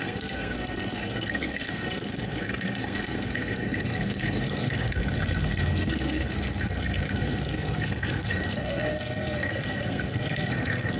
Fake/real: fake